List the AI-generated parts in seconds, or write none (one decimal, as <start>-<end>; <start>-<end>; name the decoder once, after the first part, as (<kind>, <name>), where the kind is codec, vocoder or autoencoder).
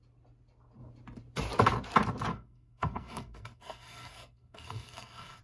2.3-5.4 (codec, SNAC)